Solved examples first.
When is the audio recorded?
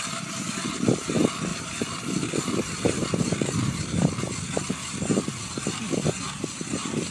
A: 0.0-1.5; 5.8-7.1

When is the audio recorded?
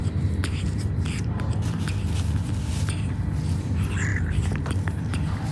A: 1.5-4.1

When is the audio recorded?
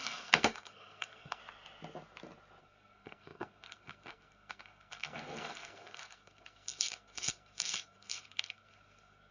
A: 1.4-2.6